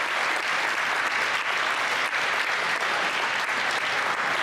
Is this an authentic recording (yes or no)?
yes